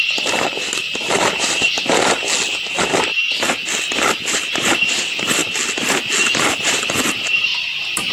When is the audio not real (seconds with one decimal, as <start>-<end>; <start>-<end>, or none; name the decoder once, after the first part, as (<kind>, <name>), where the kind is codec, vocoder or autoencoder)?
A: 0.0-2.2 (vocoder, BigVGAN v2); 4.1-5.4; 6.4-7.5